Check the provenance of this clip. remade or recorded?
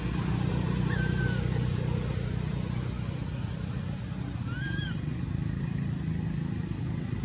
recorded